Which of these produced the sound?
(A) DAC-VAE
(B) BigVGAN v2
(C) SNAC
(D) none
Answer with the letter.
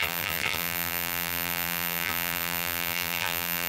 B